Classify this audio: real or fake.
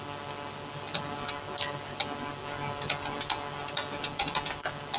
real